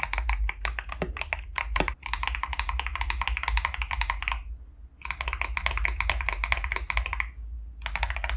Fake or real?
real